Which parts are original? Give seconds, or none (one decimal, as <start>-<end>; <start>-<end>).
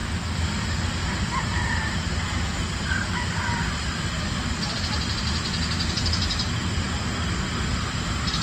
0.0-8.4